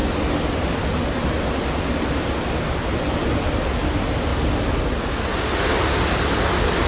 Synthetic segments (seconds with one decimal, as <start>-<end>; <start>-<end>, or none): none